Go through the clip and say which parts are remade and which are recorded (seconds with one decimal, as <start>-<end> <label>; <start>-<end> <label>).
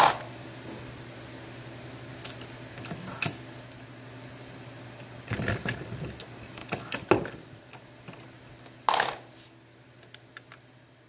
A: 0.0-11.1 recorded